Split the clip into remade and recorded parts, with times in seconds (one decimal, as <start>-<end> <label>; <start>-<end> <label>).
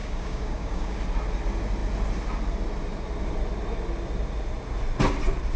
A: 0.0-1.0 remade; 1.0-5.6 recorded